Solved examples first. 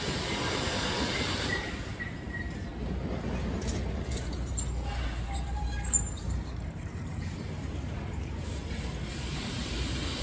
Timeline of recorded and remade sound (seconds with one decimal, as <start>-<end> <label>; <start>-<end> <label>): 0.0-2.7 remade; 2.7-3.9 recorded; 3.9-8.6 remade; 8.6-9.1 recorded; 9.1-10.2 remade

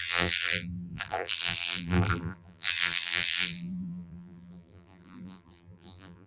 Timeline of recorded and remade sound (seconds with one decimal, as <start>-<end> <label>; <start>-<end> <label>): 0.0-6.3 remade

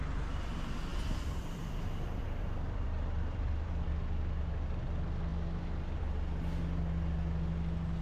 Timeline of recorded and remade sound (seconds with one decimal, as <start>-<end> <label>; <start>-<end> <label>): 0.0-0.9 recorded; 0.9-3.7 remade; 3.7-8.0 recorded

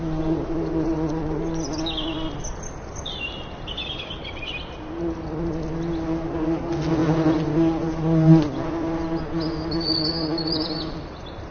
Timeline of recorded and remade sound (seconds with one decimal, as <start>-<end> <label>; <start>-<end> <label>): 0.0-10.3 recorded; 10.3-11.5 remade

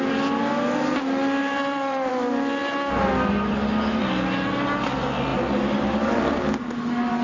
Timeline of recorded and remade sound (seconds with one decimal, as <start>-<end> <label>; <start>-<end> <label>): 0.0-1.4 recorded; 1.4-2.1 remade; 2.1-2.6 recorded; 2.6-3.1 remade; 3.1-5.3 recorded; 5.3-6.4 remade; 6.4-7.2 recorded

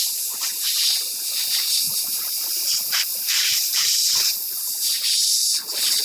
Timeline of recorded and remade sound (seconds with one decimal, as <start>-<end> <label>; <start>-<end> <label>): 0.0-0.5 remade; 0.5-2.7 recorded; 2.7-4.3 remade; 4.3-6.0 recorded